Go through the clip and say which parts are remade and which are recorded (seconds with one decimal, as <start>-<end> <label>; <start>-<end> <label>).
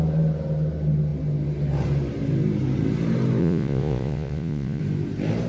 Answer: 0.0-3.4 recorded; 3.4-4.8 remade; 4.8-5.5 recorded